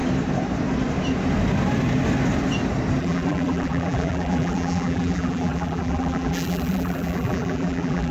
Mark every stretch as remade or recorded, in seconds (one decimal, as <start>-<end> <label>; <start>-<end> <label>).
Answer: 0.0-3.0 recorded; 3.0-8.1 remade